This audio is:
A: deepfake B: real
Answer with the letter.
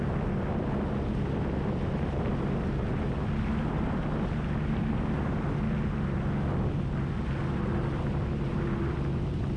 B